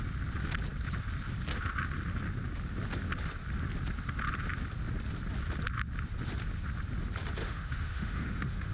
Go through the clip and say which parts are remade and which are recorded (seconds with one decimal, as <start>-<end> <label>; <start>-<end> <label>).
0.0-7.4 recorded; 7.4-8.7 remade